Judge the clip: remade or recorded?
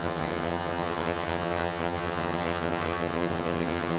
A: remade